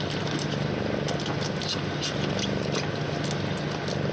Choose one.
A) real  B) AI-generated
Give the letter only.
A